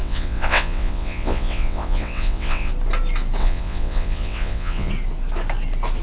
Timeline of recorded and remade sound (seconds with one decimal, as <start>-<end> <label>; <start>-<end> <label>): 0.0-2.7 remade; 2.7-3.4 recorded; 3.4-4.9 remade; 4.9-6.0 recorded

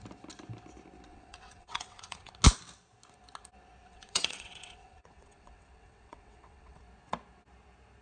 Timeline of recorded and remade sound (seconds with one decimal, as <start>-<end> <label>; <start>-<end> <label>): 0.0-1.1 recorded; 1.1-2.3 remade; 2.3-3.8 recorded; 3.8-6.8 remade; 6.8-8.0 recorded

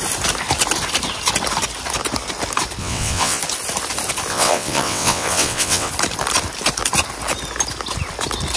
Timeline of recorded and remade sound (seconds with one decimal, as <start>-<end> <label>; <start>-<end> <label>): 0.0-2.8 recorded; 2.8-3.4 remade; 3.4-4.3 recorded; 4.3-5.9 remade; 5.9-8.6 recorded

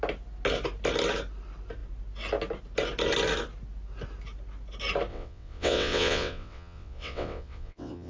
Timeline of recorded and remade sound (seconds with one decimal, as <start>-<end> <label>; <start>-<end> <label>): 0.0-5.1 recorded; 5.1-8.1 remade

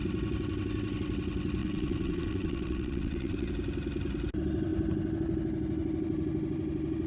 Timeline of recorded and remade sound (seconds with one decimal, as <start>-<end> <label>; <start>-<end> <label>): 0.0-1.6 recorded; 1.6-3.5 remade; 3.5-7.1 recorded

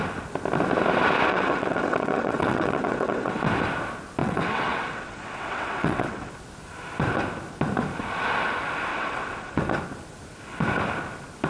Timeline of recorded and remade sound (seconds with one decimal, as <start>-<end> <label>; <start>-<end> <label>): 0.0-1.3 recorded; 1.3-3.4 remade; 3.4-4.2 recorded; 4.2-6.3 remade; 6.3-8.9 recorded; 8.9-9.6 remade; 9.6-11.5 recorded

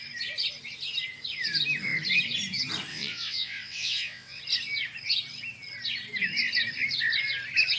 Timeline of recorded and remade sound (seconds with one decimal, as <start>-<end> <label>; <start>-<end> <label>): 0.0-2.9 recorded; 2.9-4.4 remade; 4.4-7.8 recorded